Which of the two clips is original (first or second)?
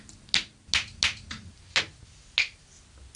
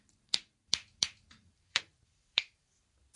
first